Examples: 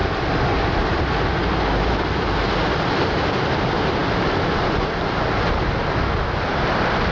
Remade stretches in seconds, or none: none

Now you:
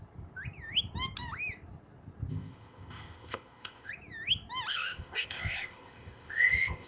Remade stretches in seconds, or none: 2.3-3.9; 4.7-6.9

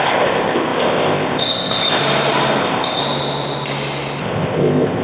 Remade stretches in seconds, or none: 0.0-2.0; 2.6-3.0; 4.2-5.0

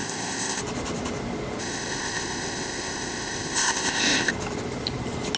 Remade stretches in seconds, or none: 0.0-0.6; 1.6-4.3

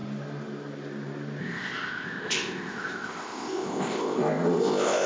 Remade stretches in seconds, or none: 1.4-5.1

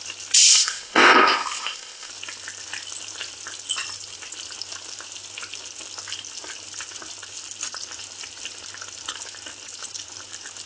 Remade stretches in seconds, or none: 0.5-2.1

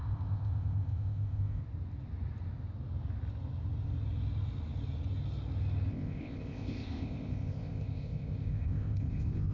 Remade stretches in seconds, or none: 0.0-1.6; 5.9-9.5

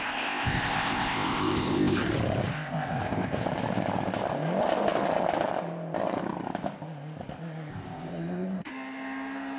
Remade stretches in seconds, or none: 0.0-2.0; 2.5-3.4; 7.7-8.7